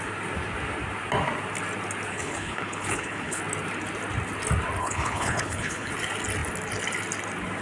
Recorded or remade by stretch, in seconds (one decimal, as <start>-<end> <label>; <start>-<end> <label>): 0.0-2.1 recorded; 2.1-3.4 remade; 3.4-4.8 recorded; 4.8-5.9 remade; 5.9-7.6 recorded